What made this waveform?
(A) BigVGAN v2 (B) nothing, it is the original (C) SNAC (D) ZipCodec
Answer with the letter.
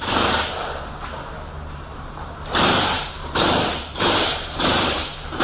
A